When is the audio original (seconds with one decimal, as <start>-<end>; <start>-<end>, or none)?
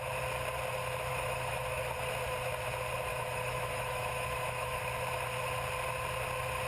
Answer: 0.0-1.1; 1.8-3.1; 4.8-6.7